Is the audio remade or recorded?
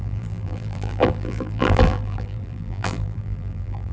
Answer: remade